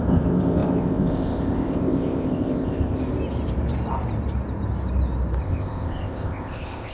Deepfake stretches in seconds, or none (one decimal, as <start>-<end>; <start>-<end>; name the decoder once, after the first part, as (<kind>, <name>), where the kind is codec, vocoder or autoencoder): 0.0-3.0 (codec, ZipCodec); 5.4-6.9